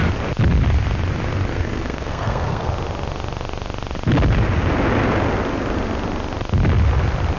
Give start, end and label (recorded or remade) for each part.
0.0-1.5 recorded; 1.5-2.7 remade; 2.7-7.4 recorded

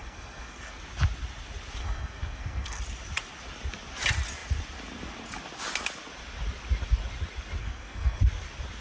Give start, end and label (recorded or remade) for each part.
0.0-0.8 remade; 0.8-1.8 recorded; 1.8-2.8 remade; 2.8-7.6 recorded; 7.6-8.2 remade; 8.2-8.8 recorded

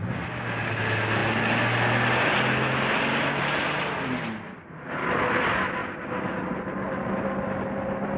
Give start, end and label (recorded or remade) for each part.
0.0-8.2 recorded

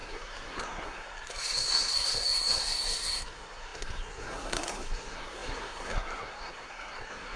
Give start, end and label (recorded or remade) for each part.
0.0-7.4 remade

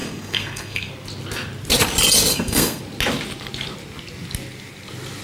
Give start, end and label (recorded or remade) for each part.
0.0-0.9 remade; 0.9-2.3 recorded; 2.3-2.8 remade; 2.8-5.2 recorded

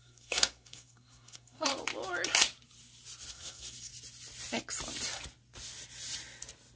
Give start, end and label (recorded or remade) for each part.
0.0-1.7 remade; 1.7-3.3 recorded; 3.3-3.9 remade; 3.9-6.8 recorded